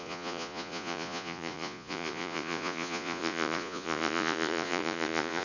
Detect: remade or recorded remade